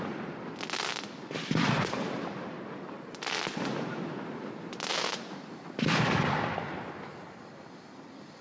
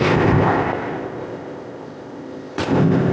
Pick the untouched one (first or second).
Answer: first